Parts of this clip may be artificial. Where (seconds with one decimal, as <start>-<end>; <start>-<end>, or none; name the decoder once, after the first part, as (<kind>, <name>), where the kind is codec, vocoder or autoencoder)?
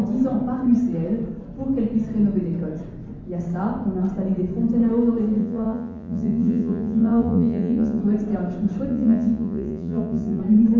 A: 5.4-8.0 (vocoder, Vocos); 8.9-10.4